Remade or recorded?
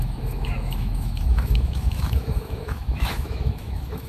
remade